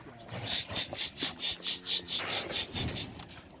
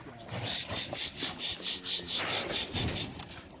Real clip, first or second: first